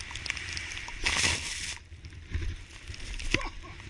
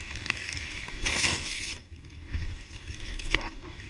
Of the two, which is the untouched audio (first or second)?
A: first